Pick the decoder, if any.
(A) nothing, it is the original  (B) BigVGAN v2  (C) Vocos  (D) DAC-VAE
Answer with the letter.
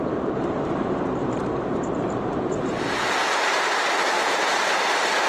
B